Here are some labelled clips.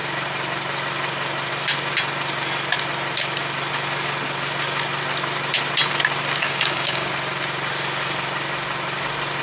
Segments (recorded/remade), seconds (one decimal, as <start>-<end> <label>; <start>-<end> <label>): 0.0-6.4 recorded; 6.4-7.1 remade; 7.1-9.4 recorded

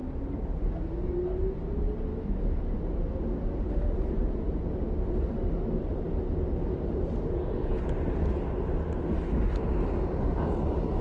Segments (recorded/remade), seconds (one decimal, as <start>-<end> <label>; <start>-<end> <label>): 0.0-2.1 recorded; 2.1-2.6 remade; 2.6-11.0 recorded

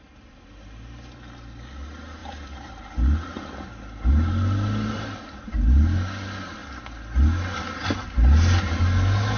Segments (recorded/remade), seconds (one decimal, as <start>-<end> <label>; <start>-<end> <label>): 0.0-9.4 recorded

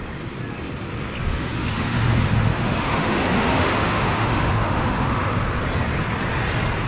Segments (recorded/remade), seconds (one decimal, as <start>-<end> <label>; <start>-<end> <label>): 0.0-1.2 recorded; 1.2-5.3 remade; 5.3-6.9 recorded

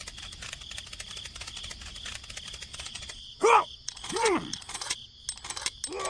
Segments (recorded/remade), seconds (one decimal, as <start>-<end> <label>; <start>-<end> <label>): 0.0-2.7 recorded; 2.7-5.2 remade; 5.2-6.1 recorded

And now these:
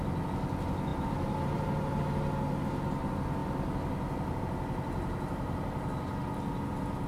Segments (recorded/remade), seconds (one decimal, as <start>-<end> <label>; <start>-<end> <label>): 0.0-0.9 recorded; 0.9-2.0 remade; 2.0-7.1 recorded